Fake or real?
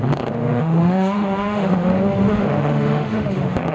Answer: fake